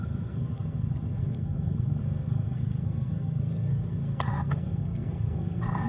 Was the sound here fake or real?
fake